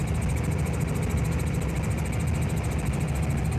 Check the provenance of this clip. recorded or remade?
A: recorded